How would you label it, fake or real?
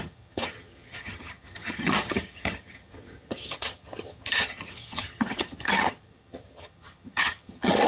fake